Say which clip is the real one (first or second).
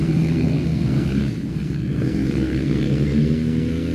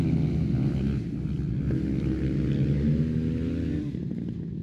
second